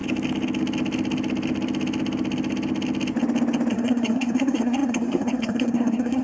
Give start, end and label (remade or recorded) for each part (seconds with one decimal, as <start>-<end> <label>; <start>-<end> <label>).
0.0-3.7 recorded; 3.7-6.2 remade